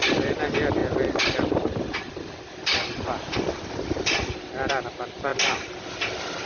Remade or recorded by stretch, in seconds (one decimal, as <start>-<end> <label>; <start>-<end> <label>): 0.0-5.3 remade; 5.3-5.9 recorded; 5.9-6.5 remade